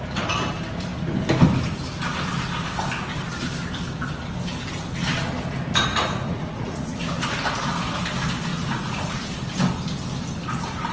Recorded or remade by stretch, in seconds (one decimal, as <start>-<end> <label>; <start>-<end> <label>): 0.0-5.9 recorded; 5.9-7.0 remade; 7.0-8.5 recorded; 8.5-9.3 remade; 9.3-10.9 recorded